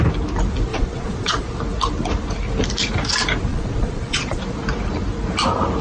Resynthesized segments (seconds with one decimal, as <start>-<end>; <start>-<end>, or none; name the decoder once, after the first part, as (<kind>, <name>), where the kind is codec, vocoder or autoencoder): 0.7-1.6 (vocoder, Vocos); 3.5-4.4